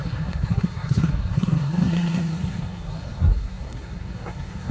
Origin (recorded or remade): remade